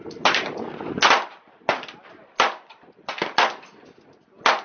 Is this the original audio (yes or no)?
yes